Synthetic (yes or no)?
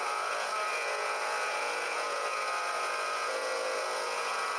yes